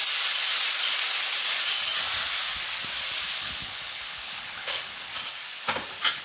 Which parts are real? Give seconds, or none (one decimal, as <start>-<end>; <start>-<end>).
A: 0.0-3.4; 5.1-6.2